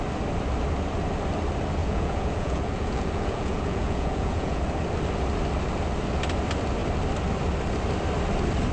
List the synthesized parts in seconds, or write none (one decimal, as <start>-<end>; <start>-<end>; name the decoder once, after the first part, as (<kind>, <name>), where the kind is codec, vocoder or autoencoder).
1.8-4.6 (vocoder, Vocos)